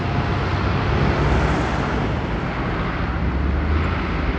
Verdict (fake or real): real